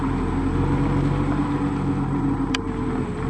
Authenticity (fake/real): real